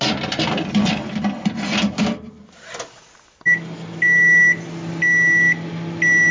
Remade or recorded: recorded